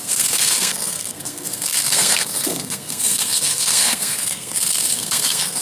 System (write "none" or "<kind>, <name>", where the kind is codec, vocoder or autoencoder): codec, SNAC